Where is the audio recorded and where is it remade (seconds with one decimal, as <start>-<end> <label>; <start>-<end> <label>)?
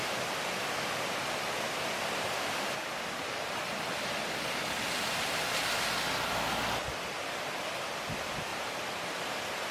0.0-8.5 recorded; 8.5-9.7 remade